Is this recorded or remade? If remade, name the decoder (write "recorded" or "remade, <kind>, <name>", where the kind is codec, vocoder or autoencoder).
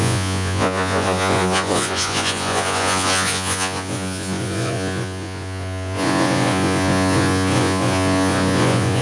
remade, vocoder, Vocos